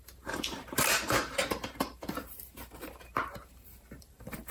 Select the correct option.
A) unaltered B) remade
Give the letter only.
B